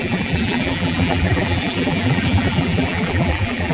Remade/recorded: remade